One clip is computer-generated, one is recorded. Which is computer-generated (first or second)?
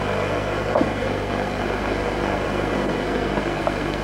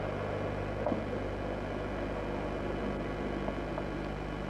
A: first